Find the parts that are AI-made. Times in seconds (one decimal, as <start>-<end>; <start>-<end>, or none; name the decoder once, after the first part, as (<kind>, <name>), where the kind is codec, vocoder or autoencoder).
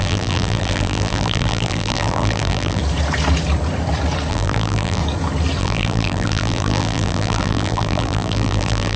0.0-2.8 (vocoder, BigVGAN v2); 4.3-5.0; 5.6-9.0